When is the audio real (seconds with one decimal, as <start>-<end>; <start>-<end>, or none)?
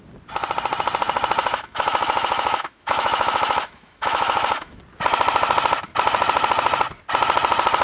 0.0-1.4; 4.8-7.8